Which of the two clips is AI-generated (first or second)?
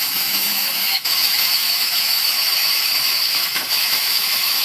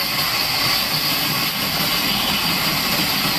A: first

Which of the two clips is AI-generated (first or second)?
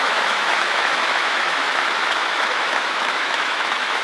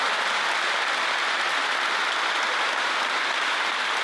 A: first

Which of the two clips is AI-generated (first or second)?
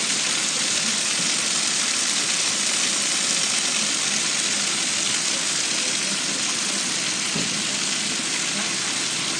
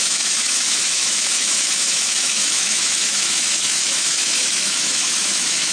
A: second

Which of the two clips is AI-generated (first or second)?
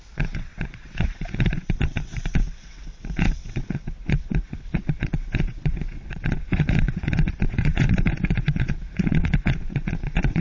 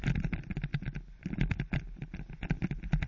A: first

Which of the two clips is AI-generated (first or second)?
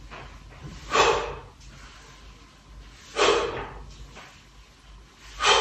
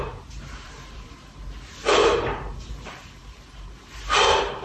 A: second